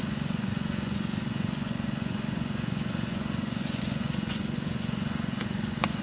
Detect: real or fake fake